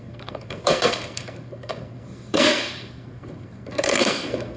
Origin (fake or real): fake